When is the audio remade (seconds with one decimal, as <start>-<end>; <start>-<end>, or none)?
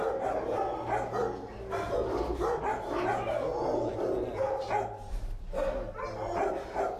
none